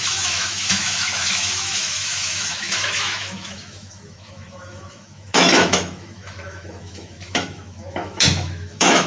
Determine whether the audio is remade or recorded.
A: remade